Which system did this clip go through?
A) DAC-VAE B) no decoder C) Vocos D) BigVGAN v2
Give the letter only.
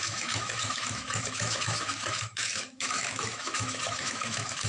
A